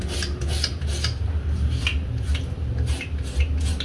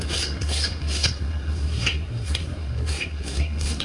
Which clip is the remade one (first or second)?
second